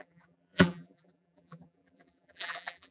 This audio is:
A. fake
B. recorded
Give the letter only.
A